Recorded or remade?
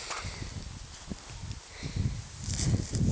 recorded